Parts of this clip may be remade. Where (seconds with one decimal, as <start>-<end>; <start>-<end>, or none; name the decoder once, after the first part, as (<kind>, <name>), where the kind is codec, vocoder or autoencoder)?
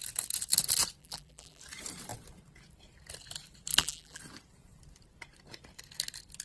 1.0-1.6 (vocoder, BigVGAN v2); 3.7-4.2